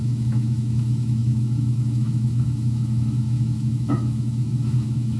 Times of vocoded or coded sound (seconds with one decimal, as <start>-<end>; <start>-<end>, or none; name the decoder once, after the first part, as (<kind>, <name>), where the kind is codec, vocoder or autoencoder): 0.0-5.2 (autoencoder, DAC-VAE)